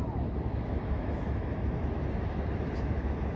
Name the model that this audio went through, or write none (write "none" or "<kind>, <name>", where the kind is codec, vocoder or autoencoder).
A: autoencoder, DAC-VAE